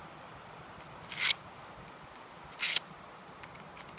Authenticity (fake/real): real